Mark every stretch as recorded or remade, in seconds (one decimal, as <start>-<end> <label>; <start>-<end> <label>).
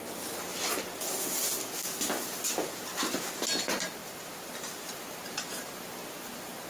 0.0-4.0 recorded; 4.0-5.5 remade; 5.5-6.7 recorded